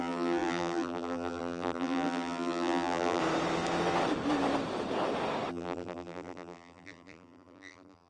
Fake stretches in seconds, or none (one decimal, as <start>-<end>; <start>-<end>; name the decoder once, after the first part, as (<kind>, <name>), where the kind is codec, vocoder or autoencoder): 0.0-3.2 (vocoder, BigVGAN v2); 5.5-8.1